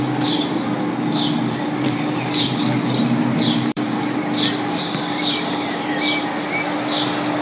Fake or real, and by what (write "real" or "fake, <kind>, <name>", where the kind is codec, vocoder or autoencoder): fake, vocoder, BigVGAN v2